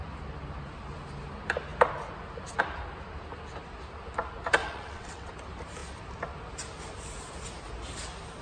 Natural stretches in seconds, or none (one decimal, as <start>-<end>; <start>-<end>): 0.0-4.6; 5.3-8.4